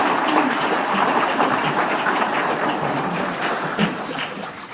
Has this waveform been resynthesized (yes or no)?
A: yes